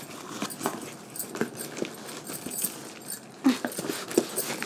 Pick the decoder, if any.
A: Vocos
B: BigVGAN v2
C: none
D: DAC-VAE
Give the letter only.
C